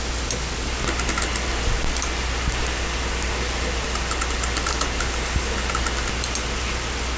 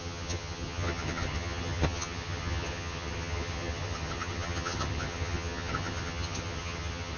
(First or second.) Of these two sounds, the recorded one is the first